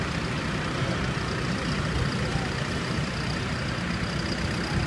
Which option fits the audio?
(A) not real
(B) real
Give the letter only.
B